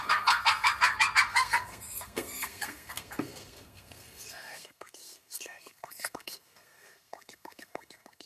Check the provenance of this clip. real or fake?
fake